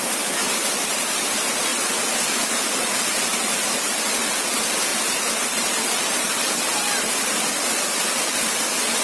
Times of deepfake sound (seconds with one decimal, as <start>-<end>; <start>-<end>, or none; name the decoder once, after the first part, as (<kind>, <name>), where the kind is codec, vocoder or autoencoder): 0.6-1.2 (vocoder, BigVGAN v2); 4.9-6.3